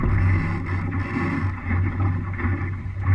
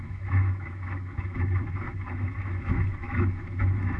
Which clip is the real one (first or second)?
first